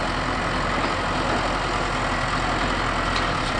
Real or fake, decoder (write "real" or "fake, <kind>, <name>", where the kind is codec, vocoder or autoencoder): real